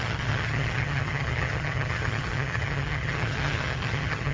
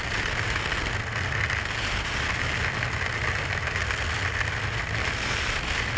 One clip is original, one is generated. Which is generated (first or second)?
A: first